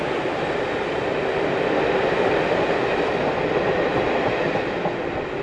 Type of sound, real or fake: real